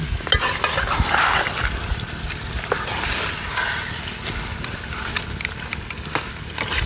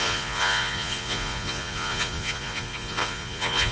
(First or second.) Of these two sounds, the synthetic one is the second